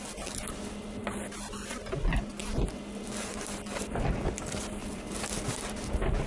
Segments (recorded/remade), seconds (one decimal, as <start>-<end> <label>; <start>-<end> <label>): 0.0-4.8 recorded; 4.8-5.6 remade; 5.6-6.3 recorded

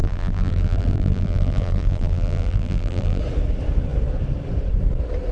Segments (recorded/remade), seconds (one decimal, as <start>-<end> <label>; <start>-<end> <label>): 0.0-3.2 remade; 3.2-5.3 recorded

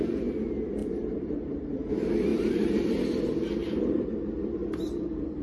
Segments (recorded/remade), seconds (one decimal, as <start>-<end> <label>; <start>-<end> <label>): 0.0-0.8 recorded; 0.8-1.9 remade; 1.9-2.3 recorded; 2.3-3.0 remade; 3.0-3.6 recorded; 3.6-4.1 remade; 4.1-5.4 recorded

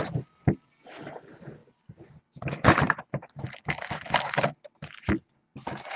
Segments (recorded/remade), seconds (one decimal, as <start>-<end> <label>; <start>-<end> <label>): 0.0-6.0 recorded

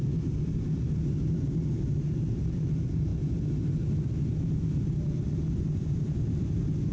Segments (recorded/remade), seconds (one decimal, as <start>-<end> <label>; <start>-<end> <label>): 0.0-3.1 remade; 3.1-4.4 recorded; 4.4-6.9 remade

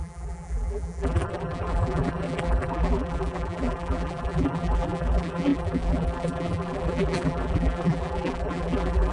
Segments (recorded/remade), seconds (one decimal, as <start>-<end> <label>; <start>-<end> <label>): 0.0-9.1 remade